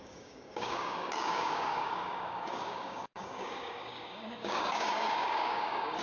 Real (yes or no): no